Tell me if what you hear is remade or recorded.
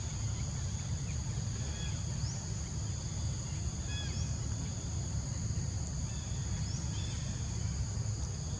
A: recorded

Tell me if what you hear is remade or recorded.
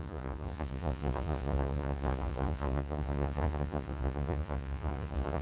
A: remade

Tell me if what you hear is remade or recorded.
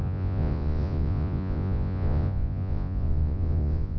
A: remade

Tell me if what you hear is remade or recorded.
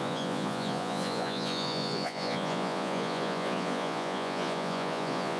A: remade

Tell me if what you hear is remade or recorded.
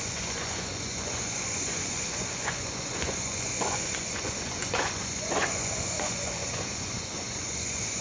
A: remade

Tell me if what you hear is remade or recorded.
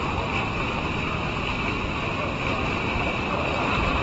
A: recorded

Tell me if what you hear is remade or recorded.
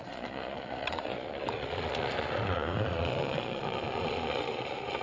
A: remade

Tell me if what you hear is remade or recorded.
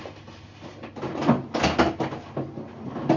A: recorded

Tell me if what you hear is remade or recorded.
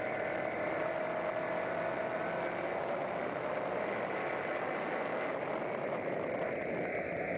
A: recorded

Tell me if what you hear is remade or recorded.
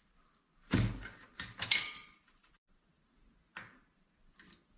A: recorded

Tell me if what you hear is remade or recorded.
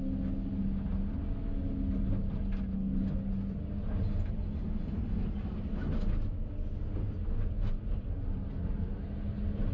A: recorded